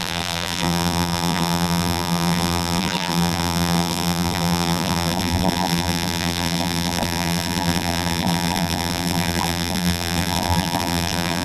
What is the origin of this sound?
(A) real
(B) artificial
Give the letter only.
B